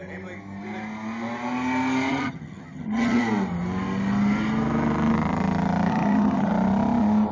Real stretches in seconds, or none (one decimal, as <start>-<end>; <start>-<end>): 0.0-2.1; 3.2-5.9; 6.5-7.3